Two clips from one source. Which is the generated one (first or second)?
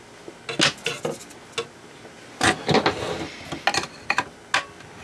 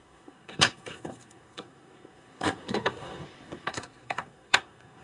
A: second